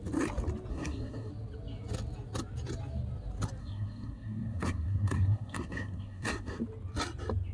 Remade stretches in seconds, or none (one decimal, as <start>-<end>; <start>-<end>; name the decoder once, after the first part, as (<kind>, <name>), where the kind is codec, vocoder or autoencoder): 0.7-1.3 (codec, SNAC); 3.6-6.6